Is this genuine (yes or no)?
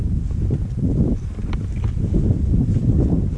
yes